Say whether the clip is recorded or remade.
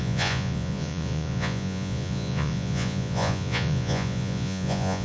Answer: remade